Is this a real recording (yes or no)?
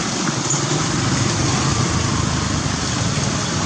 yes